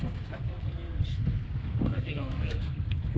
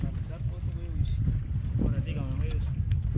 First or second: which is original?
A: second